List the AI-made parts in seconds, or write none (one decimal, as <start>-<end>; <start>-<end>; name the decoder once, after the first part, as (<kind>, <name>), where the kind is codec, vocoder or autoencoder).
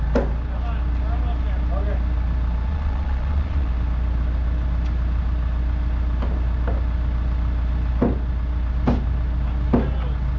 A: 2.7-3.7 (vocoder, Vocos)